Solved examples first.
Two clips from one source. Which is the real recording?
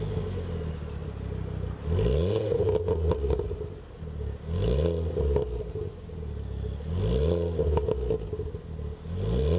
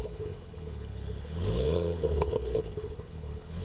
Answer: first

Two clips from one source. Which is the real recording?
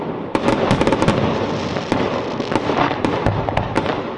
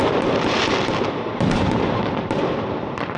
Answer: first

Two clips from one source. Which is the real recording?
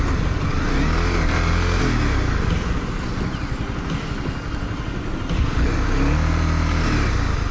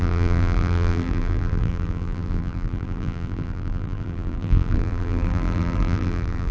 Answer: first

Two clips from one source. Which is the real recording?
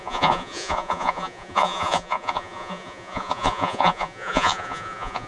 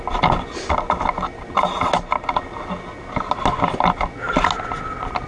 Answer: second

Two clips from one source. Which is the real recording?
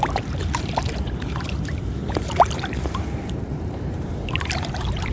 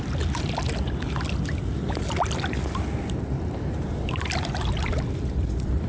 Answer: second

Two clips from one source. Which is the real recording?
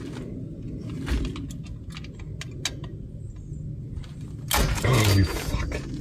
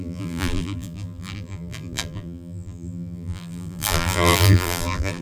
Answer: first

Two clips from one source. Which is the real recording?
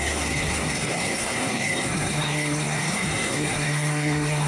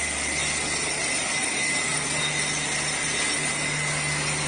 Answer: second